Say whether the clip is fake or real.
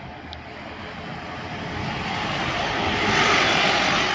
real